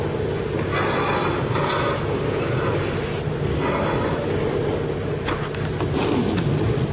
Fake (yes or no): no